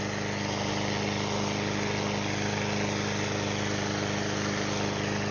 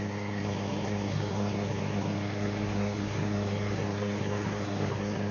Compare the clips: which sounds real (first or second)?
first